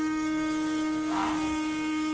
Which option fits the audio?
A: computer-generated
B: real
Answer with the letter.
A